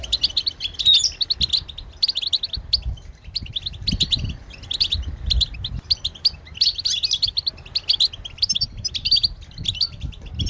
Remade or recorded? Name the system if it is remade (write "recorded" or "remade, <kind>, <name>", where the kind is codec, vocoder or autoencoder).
recorded